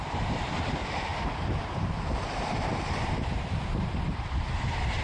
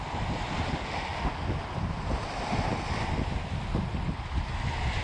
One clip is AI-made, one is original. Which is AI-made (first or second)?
first